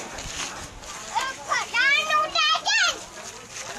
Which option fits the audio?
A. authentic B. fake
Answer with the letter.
A